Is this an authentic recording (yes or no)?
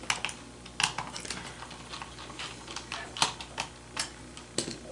yes